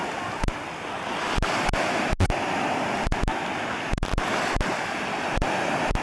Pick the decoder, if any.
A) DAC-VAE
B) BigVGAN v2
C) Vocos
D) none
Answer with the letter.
D